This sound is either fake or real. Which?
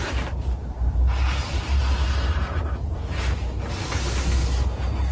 real